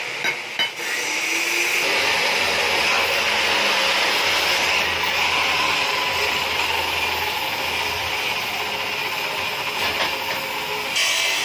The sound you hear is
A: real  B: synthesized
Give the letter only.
A